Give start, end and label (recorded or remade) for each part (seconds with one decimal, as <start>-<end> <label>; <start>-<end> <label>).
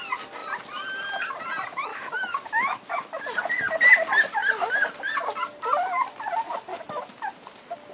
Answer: 0.0-1.9 recorded; 1.9-3.2 remade; 3.2-6.7 recorded; 6.7-7.3 remade; 7.3-7.9 recorded